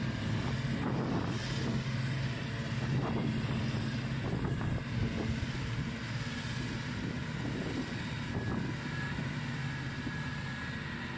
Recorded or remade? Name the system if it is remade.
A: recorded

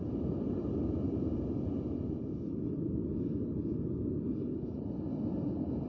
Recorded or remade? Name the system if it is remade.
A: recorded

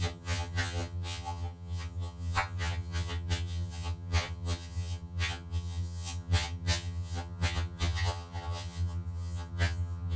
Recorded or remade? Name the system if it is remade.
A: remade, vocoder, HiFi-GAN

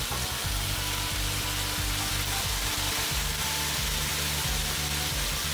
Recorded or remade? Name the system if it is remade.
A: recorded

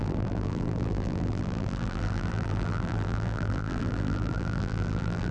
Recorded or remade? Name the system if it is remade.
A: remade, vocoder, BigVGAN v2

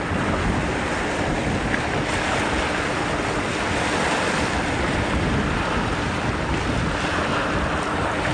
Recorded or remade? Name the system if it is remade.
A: recorded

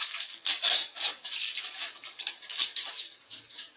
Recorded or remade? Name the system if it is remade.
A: remade, codec, DAC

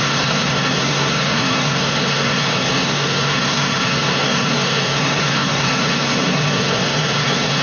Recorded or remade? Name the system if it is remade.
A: remade, codec, SNAC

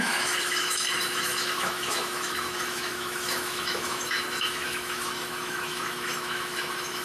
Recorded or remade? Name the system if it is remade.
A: remade, autoencoder, DAC-VAE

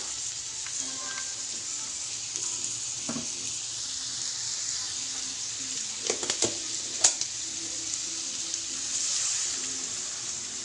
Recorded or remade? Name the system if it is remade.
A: recorded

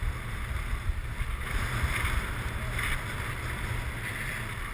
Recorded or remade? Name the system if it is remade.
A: recorded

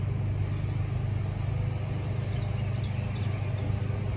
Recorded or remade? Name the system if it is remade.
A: recorded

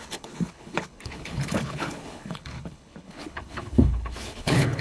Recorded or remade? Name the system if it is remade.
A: remade, codec, HILCodec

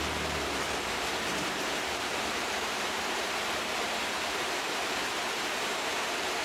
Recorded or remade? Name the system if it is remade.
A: remade, vocoder, BigVGAN v2